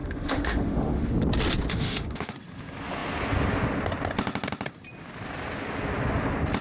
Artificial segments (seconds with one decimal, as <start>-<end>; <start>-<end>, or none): 0.0-1.1; 1.7-2.3